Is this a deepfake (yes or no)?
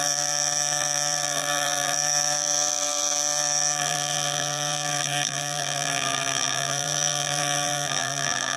yes